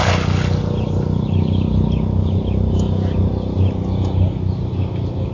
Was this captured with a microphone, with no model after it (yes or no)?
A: yes